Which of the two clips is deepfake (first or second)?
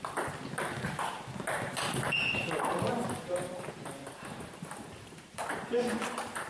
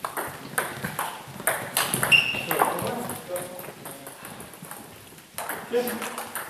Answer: first